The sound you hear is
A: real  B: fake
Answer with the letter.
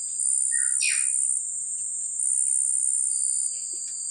A